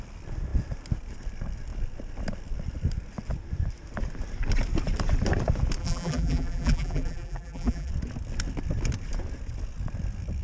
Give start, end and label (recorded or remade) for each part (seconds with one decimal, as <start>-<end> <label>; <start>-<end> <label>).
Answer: 0.0-5.8 recorded; 5.8-7.9 remade; 7.9-10.4 recorded